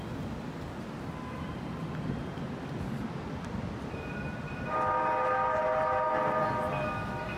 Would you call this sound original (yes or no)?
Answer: yes